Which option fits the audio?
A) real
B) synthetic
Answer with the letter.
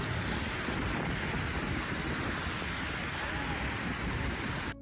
A